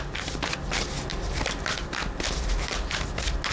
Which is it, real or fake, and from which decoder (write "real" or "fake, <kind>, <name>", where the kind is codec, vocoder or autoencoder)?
real